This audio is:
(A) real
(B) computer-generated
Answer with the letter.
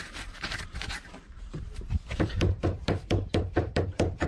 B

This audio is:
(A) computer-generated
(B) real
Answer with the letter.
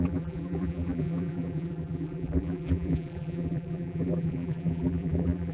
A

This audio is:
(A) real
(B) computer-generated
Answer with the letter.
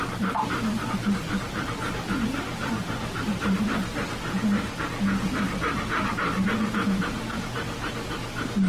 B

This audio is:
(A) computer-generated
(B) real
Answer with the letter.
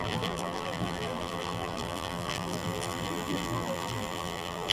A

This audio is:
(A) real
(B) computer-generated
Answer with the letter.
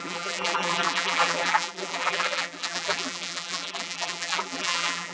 B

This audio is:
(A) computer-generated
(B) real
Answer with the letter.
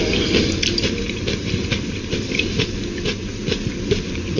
A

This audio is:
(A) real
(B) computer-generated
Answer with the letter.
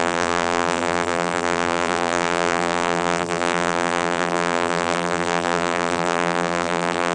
B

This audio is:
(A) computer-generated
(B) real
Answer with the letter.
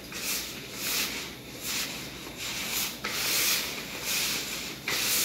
B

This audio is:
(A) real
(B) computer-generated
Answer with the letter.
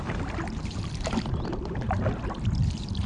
B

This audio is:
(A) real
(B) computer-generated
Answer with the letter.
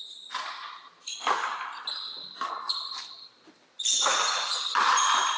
A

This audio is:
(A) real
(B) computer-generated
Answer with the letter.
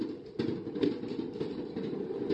A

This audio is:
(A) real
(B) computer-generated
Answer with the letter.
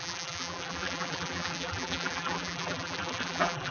B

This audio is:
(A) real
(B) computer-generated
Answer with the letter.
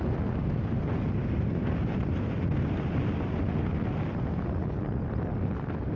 A